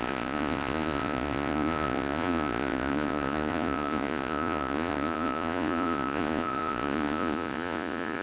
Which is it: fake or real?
fake